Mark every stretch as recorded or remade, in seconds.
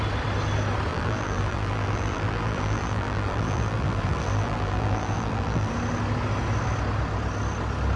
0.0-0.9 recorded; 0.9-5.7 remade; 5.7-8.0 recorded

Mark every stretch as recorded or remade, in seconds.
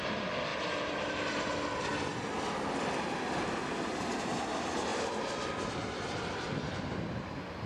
0.0-4.9 recorded; 4.9-5.8 remade; 5.8-7.7 recorded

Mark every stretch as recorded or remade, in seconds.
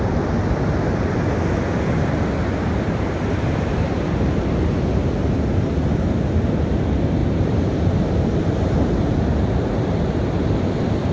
0.0-2.4 recorded; 2.4-4.5 remade; 4.5-7.2 recorded; 7.2-9.0 remade; 9.0-11.1 recorded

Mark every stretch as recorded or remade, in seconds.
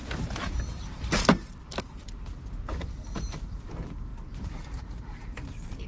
0.0-5.9 remade